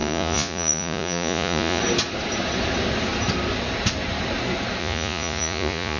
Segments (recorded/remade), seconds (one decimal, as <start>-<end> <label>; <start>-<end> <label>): 0.0-1.8 remade; 1.8-4.8 recorded; 4.8-6.0 remade